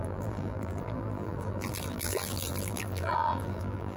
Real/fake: fake